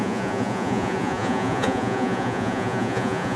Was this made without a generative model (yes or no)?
no